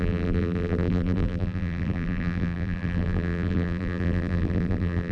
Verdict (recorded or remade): remade